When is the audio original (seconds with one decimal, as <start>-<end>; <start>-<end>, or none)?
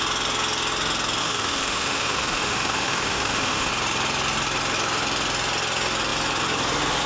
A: 0.0-1.2; 3.7-7.1